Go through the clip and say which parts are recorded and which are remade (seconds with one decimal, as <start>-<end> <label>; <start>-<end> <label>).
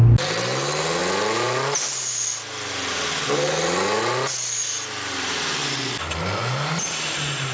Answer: 0.0-7.5 recorded